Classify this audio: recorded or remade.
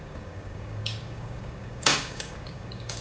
remade